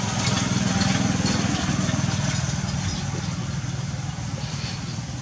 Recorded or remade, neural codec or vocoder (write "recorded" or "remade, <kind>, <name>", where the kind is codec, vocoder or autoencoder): recorded